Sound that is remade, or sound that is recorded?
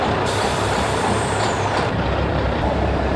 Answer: remade